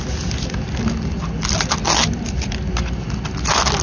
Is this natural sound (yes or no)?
yes